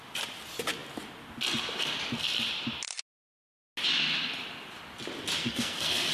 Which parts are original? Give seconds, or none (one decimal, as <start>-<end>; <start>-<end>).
0.0-5.4